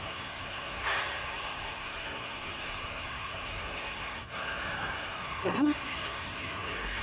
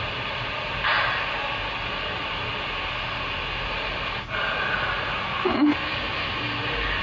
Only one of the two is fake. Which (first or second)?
first